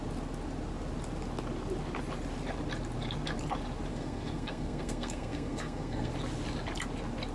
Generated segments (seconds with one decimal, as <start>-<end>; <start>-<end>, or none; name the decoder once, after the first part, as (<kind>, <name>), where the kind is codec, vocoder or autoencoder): 3.9-6.1 (codec, SNAC)